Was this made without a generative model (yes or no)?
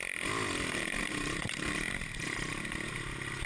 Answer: yes